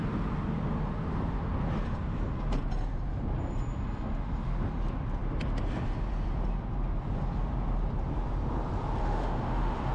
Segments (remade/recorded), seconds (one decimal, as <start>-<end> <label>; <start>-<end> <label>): 0.0-9.0 recorded; 9.0-9.9 remade